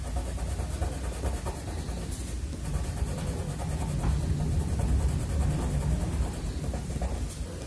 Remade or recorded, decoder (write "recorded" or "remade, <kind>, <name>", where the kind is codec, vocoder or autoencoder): recorded